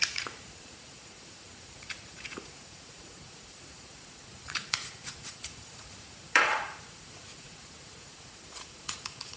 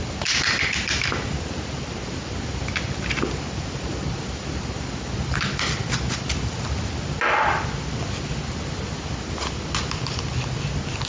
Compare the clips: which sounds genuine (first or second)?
second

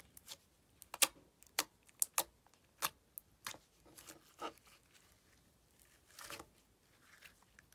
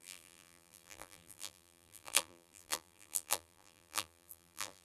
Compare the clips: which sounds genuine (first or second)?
first